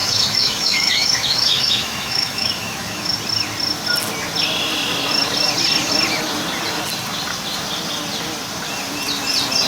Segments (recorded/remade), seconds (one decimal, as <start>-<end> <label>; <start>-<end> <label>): 0.0-3.1 remade; 3.1-9.7 recorded